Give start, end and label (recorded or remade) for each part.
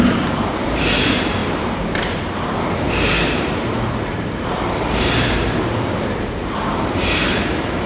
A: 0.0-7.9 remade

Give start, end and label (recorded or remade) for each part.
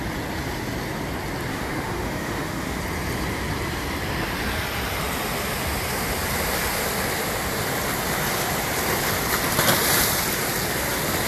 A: 0.0-1.5 recorded; 1.5-2.8 remade; 2.8-11.3 recorded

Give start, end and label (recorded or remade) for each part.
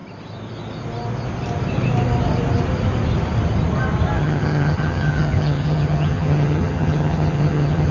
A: 0.0-4.2 recorded; 4.2-7.9 remade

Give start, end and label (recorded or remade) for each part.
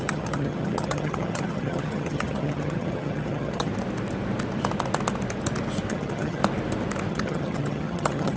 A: 0.0-3.7 remade; 3.7-5.9 recorded; 5.9-6.4 remade; 6.4-7.1 recorded; 7.1-8.4 remade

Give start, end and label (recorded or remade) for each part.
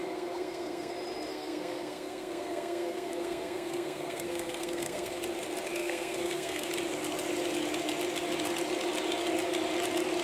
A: 0.0-0.9 remade; 0.9-1.3 recorded; 1.3-5.2 remade; 5.2-5.8 recorded; 5.8-6.7 remade; 6.7-10.2 recorded